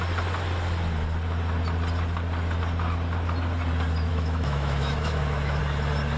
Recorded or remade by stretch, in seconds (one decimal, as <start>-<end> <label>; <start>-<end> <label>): 0.0-4.1 recorded; 4.1-5.6 remade; 5.6-6.2 recorded

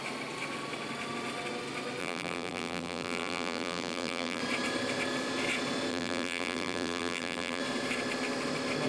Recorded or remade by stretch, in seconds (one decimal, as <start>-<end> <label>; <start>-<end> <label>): 0.0-2.0 recorded; 2.0-4.4 remade; 4.4-5.9 recorded; 5.9-7.6 remade; 7.6-8.9 recorded

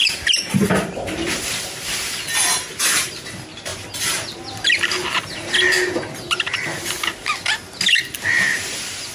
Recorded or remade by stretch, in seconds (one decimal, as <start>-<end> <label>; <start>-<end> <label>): 0.0-9.1 recorded

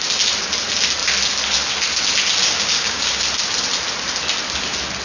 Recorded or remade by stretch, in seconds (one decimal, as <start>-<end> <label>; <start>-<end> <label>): 0.0-2.4 recorded; 2.4-3.2 remade; 3.2-5.0 recorded

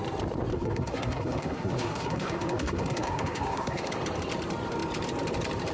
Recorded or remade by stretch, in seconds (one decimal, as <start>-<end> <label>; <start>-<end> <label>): 0.0-0.5 recorded; 0.5-3.9 remade; 3.9-5.7 recorded

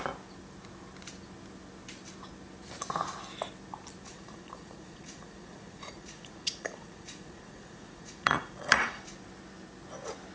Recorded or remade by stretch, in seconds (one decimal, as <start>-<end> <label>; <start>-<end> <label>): 0.0-4.1 recorded; 4.1-9.0 remade; 9.0-10.3 recorded

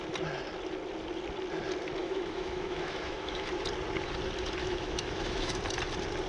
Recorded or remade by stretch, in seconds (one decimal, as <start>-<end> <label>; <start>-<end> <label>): 0.0-2.0 recorded; 2.0-3.5 remade; 3.5-4.6 recorded; 4.6-5.6 remade; 5.6-6.3 recorded